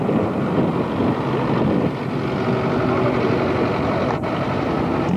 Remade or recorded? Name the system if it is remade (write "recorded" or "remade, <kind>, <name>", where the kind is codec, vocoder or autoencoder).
recorded